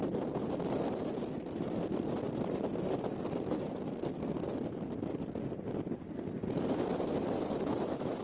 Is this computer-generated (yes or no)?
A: no